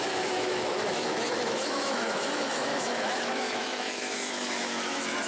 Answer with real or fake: fake